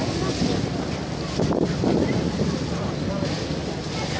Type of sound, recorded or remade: recorded